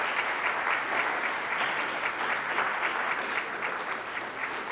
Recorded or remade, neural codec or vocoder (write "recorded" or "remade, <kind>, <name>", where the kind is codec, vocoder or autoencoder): recorded